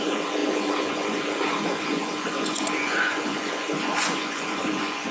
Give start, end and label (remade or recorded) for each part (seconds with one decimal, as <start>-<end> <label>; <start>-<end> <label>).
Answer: 0.0-5.1 remade